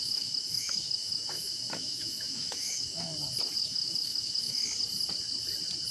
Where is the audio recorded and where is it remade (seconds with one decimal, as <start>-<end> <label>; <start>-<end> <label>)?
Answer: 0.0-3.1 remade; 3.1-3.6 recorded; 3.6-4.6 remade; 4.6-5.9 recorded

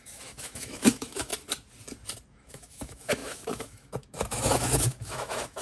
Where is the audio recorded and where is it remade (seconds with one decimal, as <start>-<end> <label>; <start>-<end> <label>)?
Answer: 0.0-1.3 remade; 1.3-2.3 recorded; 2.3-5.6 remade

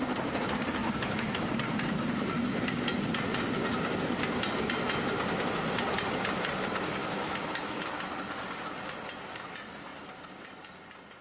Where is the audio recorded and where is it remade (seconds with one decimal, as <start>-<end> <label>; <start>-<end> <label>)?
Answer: 0.0-0.8 recorded; 0.8-1.4 remade; 1.4-7.0 recorded; 7.0-7.9 remade; 7.9-11.2 recorded

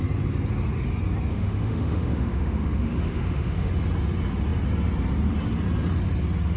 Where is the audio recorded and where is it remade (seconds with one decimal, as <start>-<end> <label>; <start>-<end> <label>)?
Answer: 0.0-1.3 recorded; 1.3-3.7 remade; 3.7-6.6 recorded

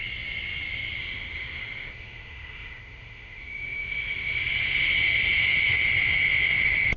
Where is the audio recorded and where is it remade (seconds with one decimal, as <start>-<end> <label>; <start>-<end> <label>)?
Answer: 0.0-1.0 recorded; 1.0-4.4 remade; 4.4-7.0 recorded

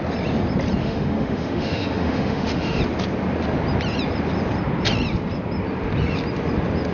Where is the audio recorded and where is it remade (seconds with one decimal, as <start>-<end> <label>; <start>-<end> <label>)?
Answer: 0.0-0.8 recorded; 0.8-2.8 remade; 2.8-6.9 recorded